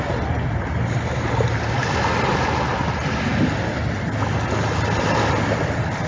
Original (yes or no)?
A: yes